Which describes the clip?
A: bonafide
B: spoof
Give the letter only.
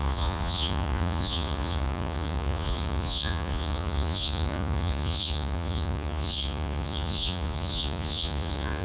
B